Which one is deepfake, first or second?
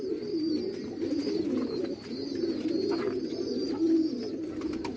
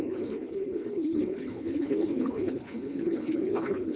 second